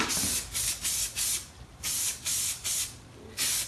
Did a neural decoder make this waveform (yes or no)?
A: no